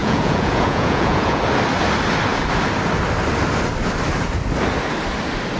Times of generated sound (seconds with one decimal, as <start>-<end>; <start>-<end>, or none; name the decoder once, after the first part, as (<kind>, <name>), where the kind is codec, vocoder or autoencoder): 0.0-1.4 (vocoder, Vocos)

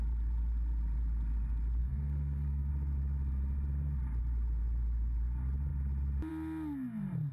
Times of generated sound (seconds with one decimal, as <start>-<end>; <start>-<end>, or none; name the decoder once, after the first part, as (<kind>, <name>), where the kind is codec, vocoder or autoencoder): 1.8-2.7 (codec, SNAC)

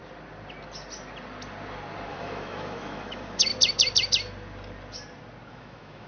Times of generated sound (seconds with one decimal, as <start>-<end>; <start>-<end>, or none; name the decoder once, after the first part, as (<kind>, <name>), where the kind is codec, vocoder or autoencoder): 2.1-3.5 (autoencoder, DAC-VAE); 5.5-6.1

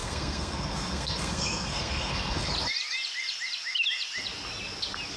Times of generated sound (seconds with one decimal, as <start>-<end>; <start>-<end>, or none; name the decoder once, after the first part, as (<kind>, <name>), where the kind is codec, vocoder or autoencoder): 0.0-2.5 (codec, SNAC)